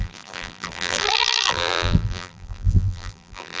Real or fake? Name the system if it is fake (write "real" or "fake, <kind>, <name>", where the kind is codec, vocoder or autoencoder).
fake, vocoder, BigVGAN v2